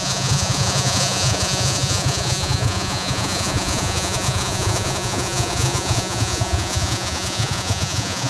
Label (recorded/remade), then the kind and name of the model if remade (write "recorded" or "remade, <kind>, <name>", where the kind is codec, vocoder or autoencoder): remade, vocoder, Vocos